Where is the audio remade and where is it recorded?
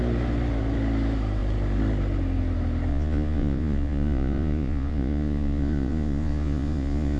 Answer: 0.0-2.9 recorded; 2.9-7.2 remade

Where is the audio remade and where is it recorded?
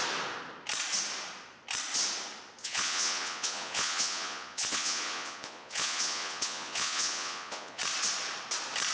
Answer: 0.0-2.6 recorded; 2.6-7.8 remade; 7.8-8.9 recorded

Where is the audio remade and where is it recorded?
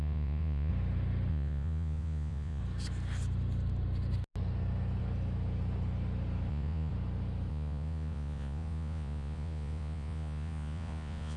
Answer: 0.0-0.7 remade; 0.7-1.3 recorded; 1.3-2.6 remade; 2.6-6.5 recorded; 6.5-6.9 remade; 6.9-7.5 recorded; 7.5-11.4 remade